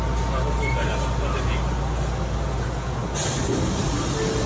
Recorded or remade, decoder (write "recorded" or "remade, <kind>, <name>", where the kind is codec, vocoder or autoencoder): recorded